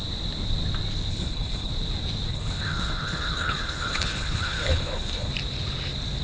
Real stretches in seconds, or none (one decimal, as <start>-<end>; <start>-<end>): 0.0-1.1; 1.7-2.3; 5.3-6.2